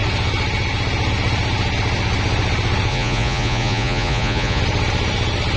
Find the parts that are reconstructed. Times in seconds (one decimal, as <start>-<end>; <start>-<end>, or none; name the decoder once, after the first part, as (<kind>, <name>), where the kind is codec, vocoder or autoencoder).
2.9-4.6 (vocoder, Vocos)